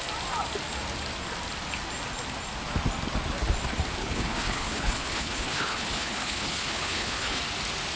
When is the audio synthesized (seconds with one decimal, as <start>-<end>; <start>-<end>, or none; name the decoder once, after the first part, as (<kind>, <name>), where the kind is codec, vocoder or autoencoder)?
4.0-7.4 (codec, HILCodec)